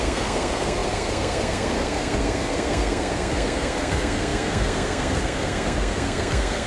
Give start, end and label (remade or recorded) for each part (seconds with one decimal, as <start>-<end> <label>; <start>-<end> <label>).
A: 0.0-6.7 remade